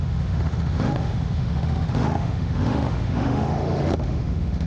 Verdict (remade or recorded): remade